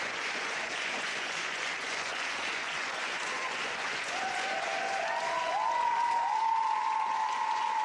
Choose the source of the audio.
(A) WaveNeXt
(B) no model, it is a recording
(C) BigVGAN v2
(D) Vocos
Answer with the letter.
D